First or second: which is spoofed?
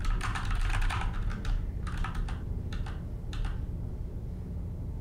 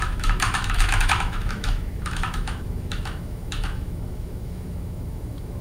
second